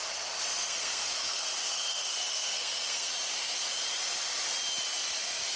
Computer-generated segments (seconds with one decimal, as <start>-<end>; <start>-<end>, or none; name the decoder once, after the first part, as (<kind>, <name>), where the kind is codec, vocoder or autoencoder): 0.5-3.1 (codec, SNAC)